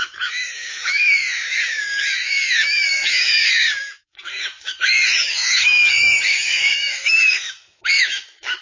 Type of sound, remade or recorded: remade